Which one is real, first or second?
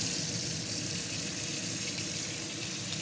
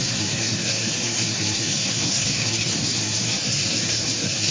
first